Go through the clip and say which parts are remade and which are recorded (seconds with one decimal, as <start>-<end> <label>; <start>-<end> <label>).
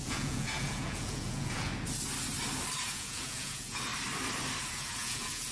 0.0-1.7 remade; 1.7-2.8 recorded; 2.8-3.9 remade; 3.9-4.6 recorded; 4.6-5.5 remade